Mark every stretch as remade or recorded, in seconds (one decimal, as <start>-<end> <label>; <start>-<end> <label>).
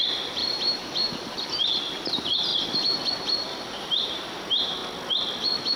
0.0-2.5 remade; 2.5-3.1 recorded; 3.1-4.8 remade; 4.8-5.8 recorded